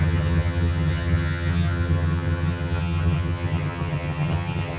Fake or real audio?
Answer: fake